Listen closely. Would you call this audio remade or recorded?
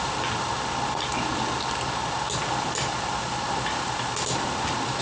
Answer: recorded